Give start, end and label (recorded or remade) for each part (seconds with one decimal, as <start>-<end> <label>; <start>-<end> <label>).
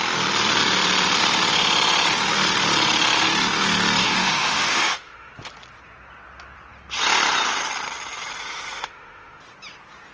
0.0-4.0 recorded; 4.0-5.3 remade; 5.3-8.4 recorded; 8.4-9.4 remade; 9.4-10.1 recorded